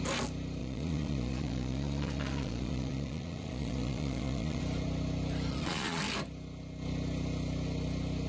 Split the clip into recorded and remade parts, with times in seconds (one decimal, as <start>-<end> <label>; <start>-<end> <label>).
0.0-0.6 recorded; 0.6-4.6 remade; 4.6-5.5 recorded; 5.5-6.0 remade; 6.0-8.3 recorded

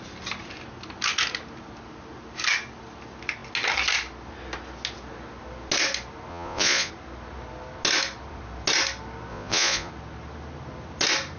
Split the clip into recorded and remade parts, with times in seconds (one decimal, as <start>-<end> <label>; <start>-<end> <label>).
0.0-6.3 recorded; 6.3-6.9 remade; 6.9-9.3 recorded; 9.3-9.9 remade; 9.9-11.4 recorded

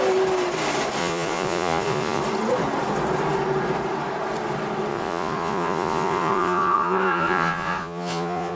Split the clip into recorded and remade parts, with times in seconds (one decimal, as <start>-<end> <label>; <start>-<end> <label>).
0.0-1.0 recorded; 1.0-2.2 remade; 2.2-4.9 recorded; 4.9-8.6 remade